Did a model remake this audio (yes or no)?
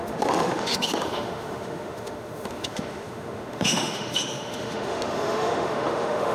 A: yes